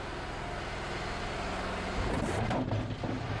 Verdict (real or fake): real